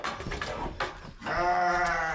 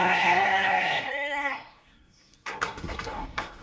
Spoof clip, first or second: second